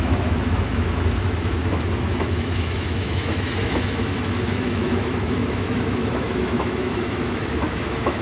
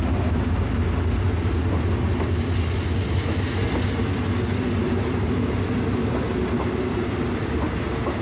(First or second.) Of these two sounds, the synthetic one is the first